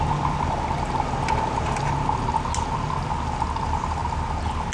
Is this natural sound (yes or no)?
yes